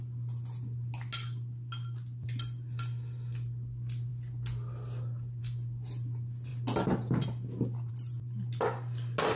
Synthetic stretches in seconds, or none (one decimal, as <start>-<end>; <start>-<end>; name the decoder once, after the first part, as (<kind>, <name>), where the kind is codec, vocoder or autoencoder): none